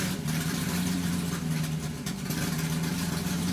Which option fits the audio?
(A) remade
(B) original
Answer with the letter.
A